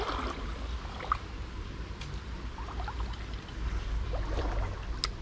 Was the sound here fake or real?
real